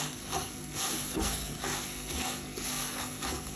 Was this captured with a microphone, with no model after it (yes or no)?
no